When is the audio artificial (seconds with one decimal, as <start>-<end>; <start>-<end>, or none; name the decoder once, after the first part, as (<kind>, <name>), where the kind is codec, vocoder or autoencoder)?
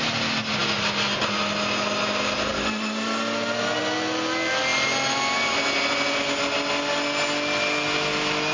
none